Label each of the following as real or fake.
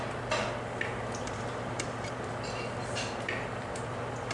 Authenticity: fake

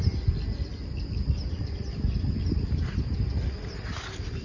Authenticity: real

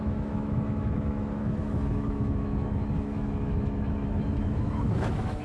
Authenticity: fake